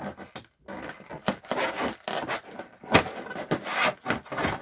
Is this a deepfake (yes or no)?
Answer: no